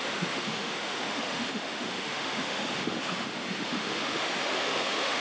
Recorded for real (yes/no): no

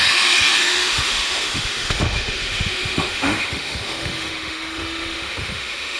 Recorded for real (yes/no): no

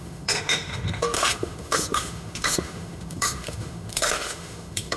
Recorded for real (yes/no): no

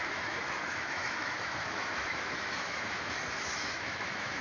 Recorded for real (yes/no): no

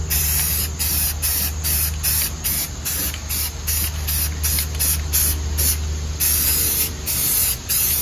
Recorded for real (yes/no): yes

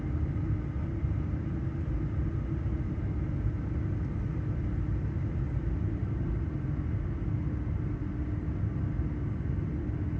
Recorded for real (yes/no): yes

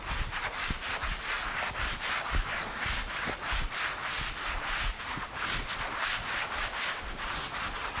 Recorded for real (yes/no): yes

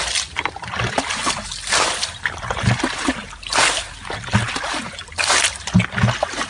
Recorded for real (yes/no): yes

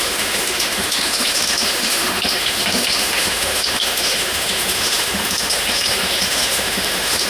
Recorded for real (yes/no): no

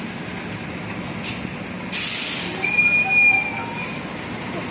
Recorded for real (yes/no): yes